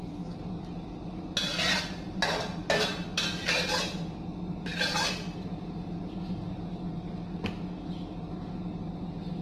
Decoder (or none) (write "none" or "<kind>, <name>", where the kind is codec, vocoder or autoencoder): none